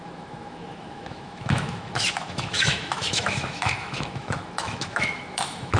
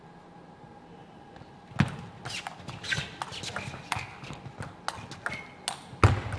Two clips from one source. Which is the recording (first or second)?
second